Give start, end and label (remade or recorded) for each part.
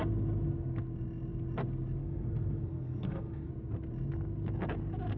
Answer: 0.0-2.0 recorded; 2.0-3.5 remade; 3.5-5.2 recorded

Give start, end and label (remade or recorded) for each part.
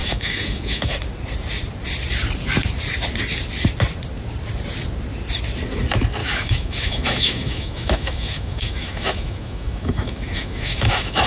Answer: 0.0-0.9 remade; 0.9-6.2 recorded; 6.2-11.3 remade